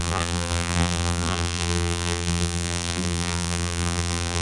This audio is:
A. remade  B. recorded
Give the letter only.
A